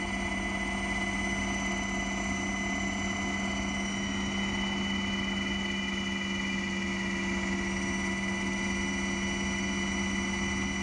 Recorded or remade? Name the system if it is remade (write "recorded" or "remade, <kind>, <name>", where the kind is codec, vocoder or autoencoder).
recorded